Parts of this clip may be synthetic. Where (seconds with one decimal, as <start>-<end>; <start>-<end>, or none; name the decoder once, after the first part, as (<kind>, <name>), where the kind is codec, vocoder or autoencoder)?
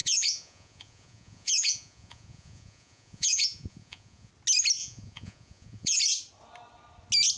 0.0-4.3 (vocoder, Vocos); 4.8-6.0